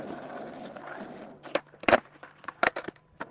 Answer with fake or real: fake